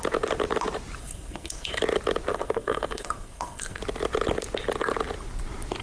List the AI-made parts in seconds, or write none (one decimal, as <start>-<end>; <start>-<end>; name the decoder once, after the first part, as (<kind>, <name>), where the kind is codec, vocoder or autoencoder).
1.0-1.8 (codec, SNAC); 2.3-3.8